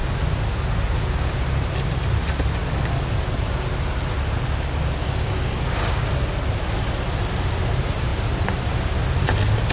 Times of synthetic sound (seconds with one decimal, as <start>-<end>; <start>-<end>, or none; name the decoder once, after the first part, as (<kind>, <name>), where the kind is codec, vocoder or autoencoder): 4.8-6.1 (codec, DAC)

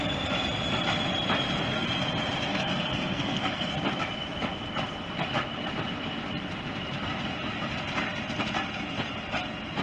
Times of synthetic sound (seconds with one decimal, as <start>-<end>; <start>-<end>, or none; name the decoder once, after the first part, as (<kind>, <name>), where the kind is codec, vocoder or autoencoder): 2.5-3.7 (codec, SNAC)

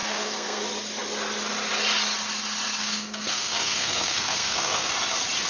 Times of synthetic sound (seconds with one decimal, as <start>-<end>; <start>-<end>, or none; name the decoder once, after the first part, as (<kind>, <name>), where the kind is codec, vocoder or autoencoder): 0.0-0.6 (codec, SNAC); 2.8-4.9